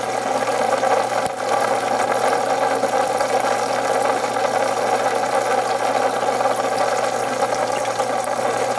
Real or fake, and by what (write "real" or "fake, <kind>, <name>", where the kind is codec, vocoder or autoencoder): real